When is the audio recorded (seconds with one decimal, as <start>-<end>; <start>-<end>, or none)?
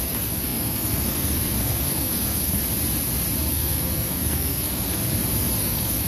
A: 2.6-3.5; 5.0-5.6